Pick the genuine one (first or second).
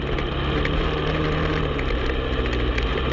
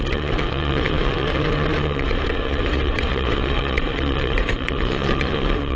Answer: first